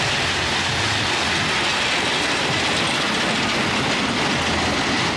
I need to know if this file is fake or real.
real